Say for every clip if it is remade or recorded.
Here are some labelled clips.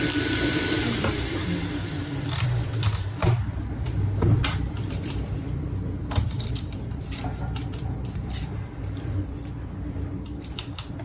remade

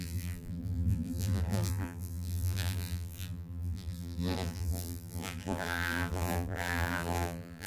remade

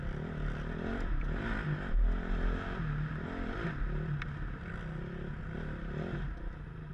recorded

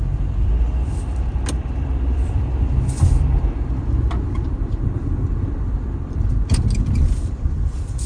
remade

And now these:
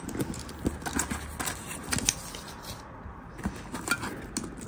recorded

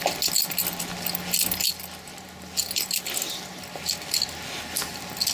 recorded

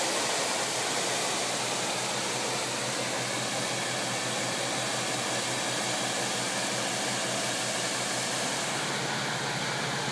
recorded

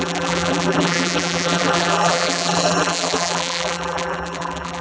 remade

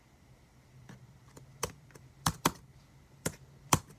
remade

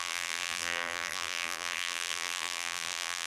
remade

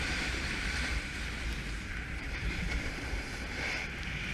remade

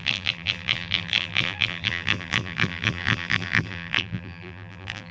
remade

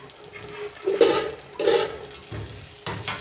recorded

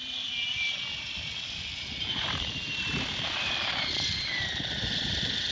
remade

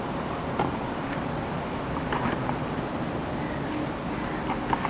recorded